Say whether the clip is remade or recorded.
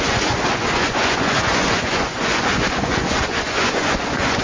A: remade